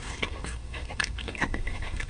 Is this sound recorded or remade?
remade